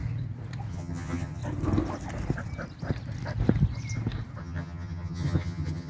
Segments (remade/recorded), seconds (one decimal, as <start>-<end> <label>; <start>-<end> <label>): 0.0-0.7 recorded; 0.7-1.4 remade; 1.4-4.4 recorded; 4.4-5.9 remade